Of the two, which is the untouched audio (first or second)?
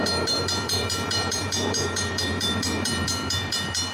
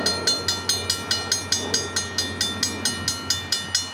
second